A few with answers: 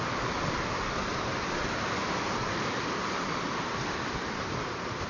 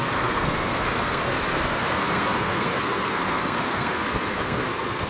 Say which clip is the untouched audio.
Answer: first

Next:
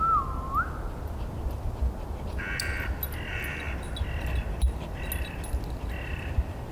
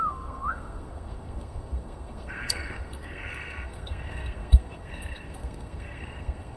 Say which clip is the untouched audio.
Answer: first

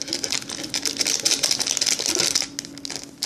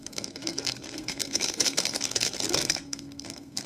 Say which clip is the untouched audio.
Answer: first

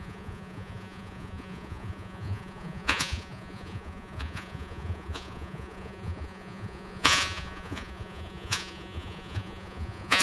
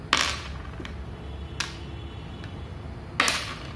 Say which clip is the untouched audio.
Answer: second